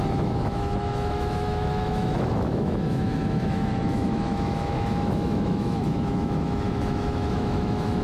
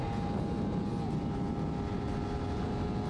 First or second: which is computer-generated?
first